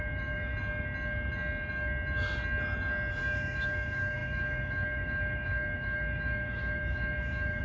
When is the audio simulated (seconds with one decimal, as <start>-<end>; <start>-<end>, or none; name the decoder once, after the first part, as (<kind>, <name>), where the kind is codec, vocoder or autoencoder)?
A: 0.0-0.5 (autoencoder, DAC-VAE); 3.1-7.6